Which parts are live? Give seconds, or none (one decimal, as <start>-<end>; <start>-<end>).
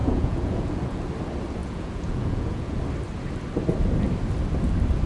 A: 1.1-1.6; 2.8-5.1